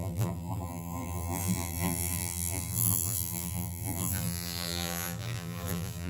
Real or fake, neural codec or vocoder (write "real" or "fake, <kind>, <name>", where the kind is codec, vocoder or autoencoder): fake, vocoder, BigVGAN v2